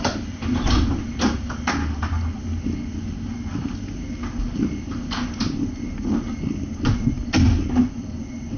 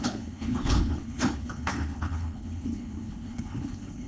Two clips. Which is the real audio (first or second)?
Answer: first